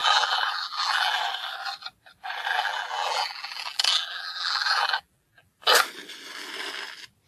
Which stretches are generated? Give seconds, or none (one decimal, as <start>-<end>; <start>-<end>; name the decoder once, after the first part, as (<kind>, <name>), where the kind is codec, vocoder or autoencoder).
0.0-1.2 (vocoder, BigVGAN v2); 2.5-5.6